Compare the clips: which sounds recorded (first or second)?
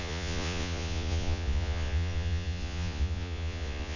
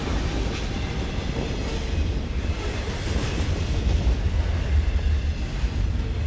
second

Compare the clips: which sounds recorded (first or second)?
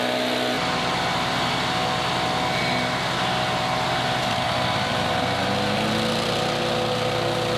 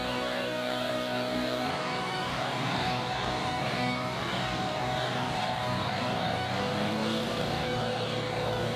first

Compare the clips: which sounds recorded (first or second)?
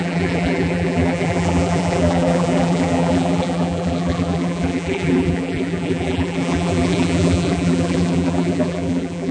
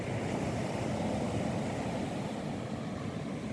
second